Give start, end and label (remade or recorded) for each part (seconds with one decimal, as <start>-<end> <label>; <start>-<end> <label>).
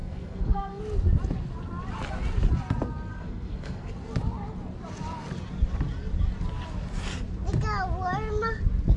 0.0-0.8 remade; 0.8-3.1 recorded; 3.1-3.9 remade; 3.9-9.0 recorded